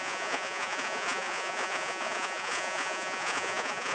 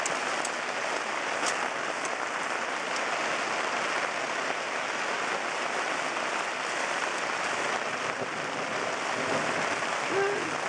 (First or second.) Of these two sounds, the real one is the second